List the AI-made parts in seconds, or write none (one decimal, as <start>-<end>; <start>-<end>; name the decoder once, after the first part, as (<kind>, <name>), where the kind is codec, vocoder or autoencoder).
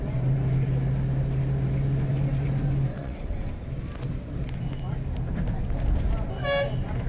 2.9-3.5 (vocoder, WaveNeXt)